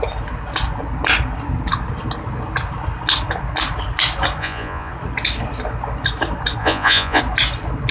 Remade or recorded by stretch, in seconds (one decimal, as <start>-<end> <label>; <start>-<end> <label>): 0.0-4.4 recorded; 4.4-4.9 remade; 4.9-6.6 recorded; 6.6-7.2 remade; 7.2-7.9 recorded